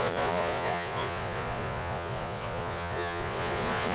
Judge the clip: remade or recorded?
remade